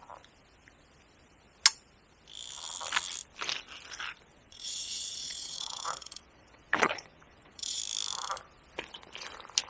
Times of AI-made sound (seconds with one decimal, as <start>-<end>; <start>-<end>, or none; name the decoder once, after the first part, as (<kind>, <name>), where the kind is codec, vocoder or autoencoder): 4.3-7.8 (vocoder, WaveNeXt)

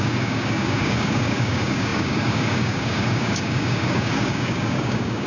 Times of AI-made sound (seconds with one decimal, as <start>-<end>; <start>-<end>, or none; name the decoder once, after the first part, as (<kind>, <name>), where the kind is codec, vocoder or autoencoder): 0.0-5.3 (codec, DAC)

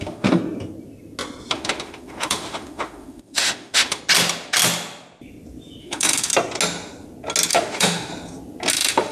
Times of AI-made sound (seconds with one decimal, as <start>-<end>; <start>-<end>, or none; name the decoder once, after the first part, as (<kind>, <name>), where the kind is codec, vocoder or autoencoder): 0.0-0.4 (autoencoder, DAC-VAE); 1.5-4.0; 5.8-6.3; 7.5-8.1; 8.7-9.1

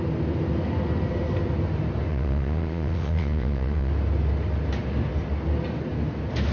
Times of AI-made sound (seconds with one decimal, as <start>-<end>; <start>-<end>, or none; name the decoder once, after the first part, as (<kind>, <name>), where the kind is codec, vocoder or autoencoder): 2.1-3.9 (vocoder, Vocos)

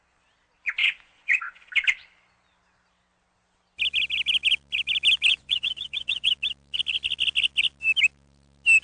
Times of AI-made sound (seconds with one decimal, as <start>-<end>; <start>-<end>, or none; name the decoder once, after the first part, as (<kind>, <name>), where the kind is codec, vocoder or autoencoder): 0.8-1.7 (vocoder, Vocos); 5.3-6.3

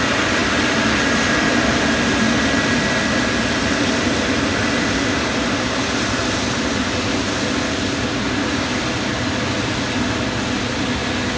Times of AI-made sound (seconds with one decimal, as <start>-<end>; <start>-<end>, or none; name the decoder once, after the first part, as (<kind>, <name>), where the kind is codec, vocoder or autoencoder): none

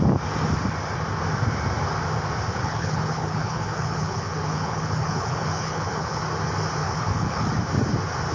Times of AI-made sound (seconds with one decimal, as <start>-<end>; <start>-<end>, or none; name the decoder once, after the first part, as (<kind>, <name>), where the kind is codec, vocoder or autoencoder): 2.5-6.2 (codec, HILCodec); 6.8-7.5

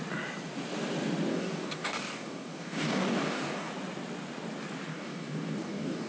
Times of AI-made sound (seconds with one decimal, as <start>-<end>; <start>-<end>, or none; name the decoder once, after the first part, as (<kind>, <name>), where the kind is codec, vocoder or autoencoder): 1.3-3.7 (codec, DAC); 4.9-6.1